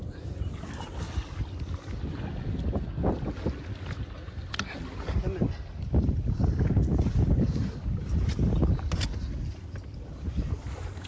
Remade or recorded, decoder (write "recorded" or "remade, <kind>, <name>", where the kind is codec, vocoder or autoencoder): recorded